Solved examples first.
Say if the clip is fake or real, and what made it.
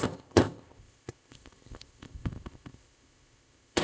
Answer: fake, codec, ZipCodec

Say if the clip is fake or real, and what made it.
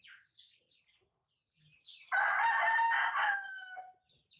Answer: real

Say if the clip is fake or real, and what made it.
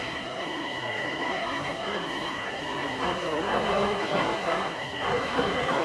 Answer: fake, codec, SNAC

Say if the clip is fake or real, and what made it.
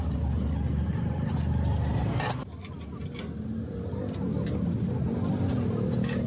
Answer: real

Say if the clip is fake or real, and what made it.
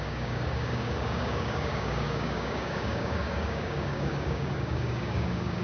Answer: fake, codec, DAC